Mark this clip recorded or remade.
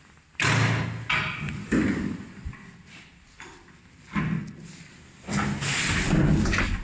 recorded